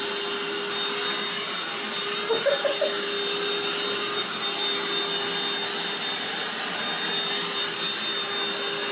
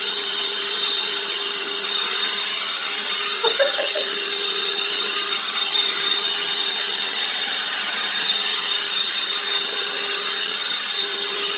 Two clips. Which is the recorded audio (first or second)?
first